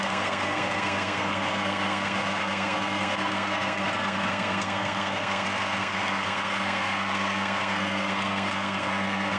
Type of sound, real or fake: fake